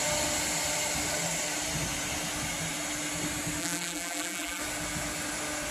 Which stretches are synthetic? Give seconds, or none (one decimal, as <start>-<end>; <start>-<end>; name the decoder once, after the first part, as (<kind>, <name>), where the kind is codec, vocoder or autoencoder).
3.6-4.6 (vocoder, BigVGAN v2)